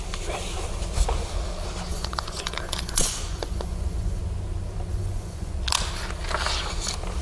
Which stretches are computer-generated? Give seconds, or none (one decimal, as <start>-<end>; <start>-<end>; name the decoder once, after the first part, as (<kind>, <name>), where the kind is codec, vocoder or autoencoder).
1.9-4.2 (vocoder, Vocos); 4.9-5.5